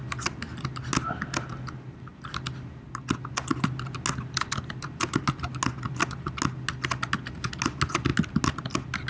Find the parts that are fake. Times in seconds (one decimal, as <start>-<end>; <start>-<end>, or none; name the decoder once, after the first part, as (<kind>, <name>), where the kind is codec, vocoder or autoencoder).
none